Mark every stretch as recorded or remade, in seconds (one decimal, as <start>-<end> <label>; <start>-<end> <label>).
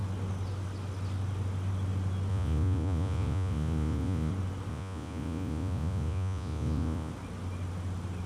0.0-2.3 recorded; 2.3-4.3 remade; 4.3-4.7 recorded; 4.7-7.1 remade; 7.1-8.3 recorded